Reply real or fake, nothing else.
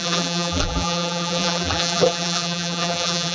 fake